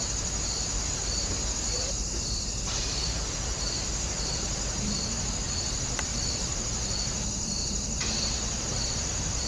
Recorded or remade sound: remade